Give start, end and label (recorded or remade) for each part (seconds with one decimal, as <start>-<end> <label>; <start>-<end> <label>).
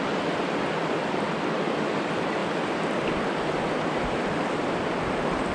0.0-5.5 recorded